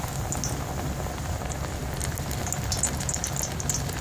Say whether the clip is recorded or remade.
recorded